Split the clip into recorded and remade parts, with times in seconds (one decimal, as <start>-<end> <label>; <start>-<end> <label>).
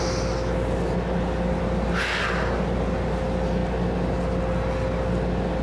0.0-5.6 recorded